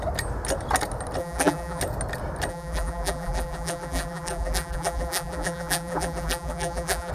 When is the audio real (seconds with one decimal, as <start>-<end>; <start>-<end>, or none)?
0.0-1.2; 1.8-2.5